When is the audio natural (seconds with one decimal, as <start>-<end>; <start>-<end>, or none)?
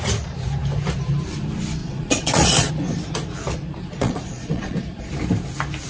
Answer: 0.0-1.8; 2.7-3.8; 5.1-5.9